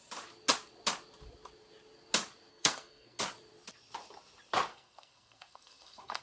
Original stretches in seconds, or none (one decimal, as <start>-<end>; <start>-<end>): 0.0-2.5; 3.2-4.7

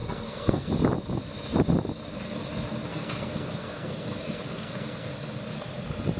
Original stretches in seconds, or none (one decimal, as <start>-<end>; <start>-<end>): 0.7-2.9; 5.1-6.2